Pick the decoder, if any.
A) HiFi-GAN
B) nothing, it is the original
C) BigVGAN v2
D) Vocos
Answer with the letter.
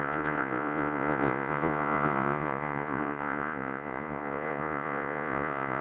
D